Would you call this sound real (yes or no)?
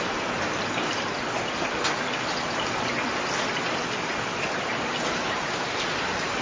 yes